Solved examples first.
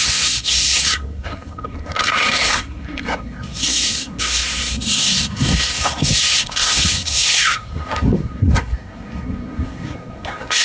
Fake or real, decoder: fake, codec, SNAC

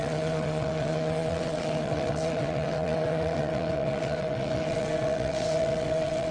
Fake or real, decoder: fake, vocoder, WaveNeXt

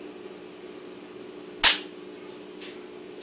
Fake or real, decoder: real